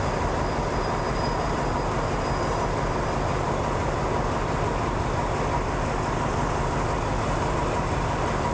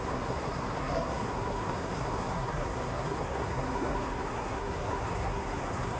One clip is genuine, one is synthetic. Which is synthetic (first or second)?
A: second